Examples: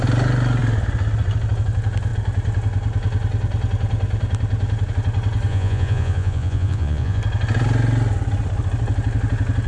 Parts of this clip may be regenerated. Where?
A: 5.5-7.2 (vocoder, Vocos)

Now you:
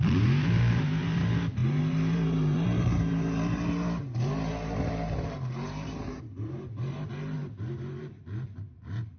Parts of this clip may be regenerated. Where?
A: 0.0-7.4 (vocoder, BigVGAN v2); 8.0-9.2

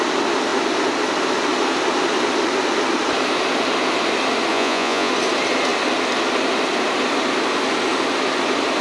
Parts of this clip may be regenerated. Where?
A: 4.5-5.1 (vocoder, Vocos)

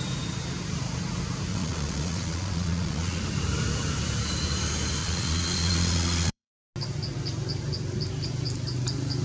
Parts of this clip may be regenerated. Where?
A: 1.5-3.2 (vocoder, Vocos); 5.0-6.5

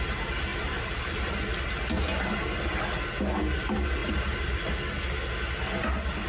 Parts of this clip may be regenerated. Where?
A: 0.5-1.7 (vocoder, BigVGAN v2); 4.0-4.7